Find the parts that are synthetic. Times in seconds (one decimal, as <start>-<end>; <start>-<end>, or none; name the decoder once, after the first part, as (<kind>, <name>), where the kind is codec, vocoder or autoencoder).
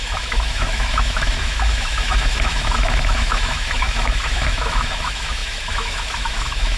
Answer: 0.0-6.8 (autoencoder, DAC-VAE)